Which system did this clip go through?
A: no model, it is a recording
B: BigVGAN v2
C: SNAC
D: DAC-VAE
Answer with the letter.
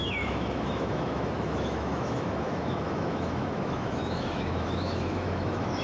D